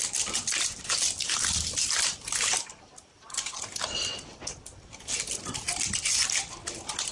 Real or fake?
real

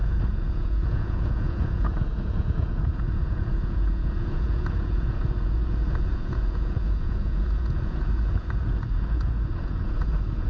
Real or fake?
fake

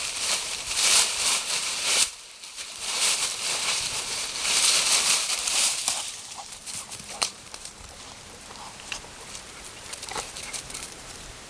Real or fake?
fake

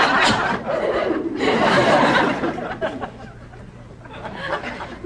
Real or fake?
real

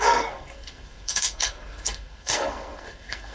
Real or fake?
fake